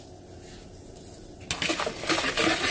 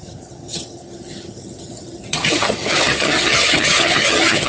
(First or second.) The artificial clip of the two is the second